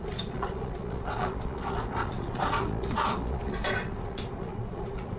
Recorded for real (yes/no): no